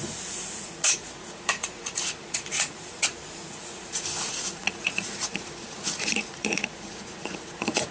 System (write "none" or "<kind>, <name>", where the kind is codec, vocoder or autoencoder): vocoder, Vocos